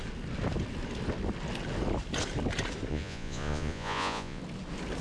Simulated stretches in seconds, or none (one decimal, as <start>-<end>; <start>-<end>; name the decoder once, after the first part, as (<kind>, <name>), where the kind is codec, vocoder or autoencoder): 2.9-4.4 (vocoder, Vocos)